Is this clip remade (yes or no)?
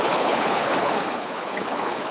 yes